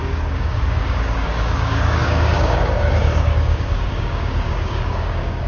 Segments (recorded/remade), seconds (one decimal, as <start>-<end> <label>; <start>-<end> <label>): 0.0-5.5 remade

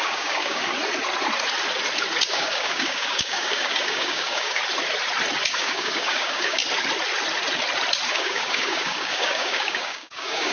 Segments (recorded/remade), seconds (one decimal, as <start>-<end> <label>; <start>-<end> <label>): 0.0-0.7 remade; 0.7-2.3 recorded; 2.3-4.6 remade; 4.6-5.5 recorded; 5.5-6.6 remade; 6.6-8.1 recorded; 8.1-10.5 remade

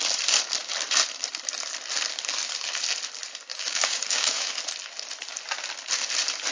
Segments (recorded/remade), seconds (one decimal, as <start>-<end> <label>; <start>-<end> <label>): 0.0-3.5 recorded; 3.5-4.5 remade; 4.5-6.5 recorded

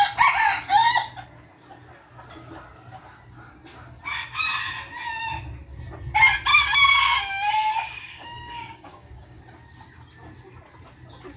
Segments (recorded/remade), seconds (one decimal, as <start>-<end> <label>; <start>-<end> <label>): 0.0-6.5 recorded; 6.5-9.4 remade; 9.4-11.4 recorded

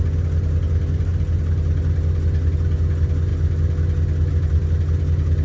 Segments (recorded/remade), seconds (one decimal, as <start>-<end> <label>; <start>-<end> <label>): 0.0-5.4 recorded